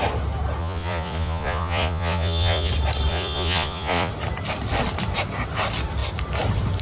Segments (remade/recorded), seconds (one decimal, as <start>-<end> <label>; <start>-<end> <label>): 0.0-0.6 recorded; 0.6-2.7 remade; 2.7-3.1 recorded; 3.1-4.1 remade; 4.1-6.8 recorded